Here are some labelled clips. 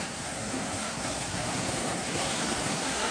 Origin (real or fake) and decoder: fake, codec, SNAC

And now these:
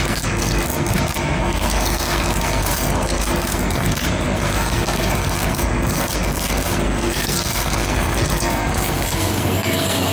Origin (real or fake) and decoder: fake, codec, SNAC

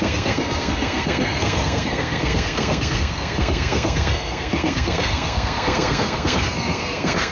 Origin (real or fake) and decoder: fake, codec, SNAC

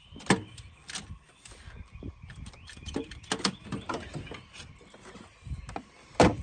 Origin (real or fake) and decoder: real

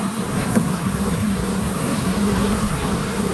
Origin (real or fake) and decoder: fake, codec, SNAC